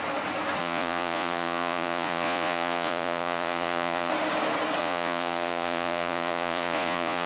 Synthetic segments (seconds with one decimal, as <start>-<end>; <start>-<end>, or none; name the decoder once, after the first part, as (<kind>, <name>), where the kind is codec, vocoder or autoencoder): 0.6-4.1 (vocoder, Vocos); 4.8-7.3